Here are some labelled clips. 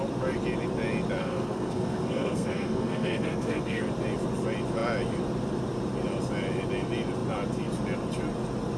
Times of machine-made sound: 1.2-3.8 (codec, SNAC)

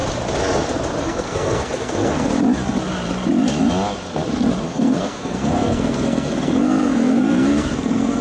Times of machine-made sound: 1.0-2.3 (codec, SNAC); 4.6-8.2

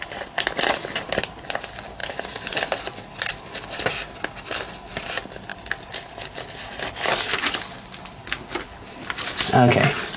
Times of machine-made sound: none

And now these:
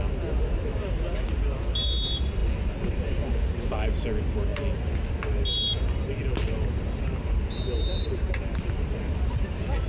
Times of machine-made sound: none

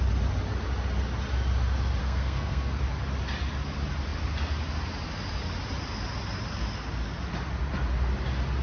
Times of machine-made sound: 2.0-2.8 (codec, SNAC)

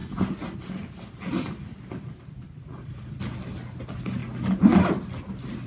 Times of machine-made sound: none